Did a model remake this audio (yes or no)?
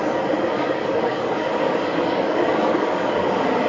yes